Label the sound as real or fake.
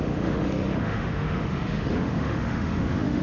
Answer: fake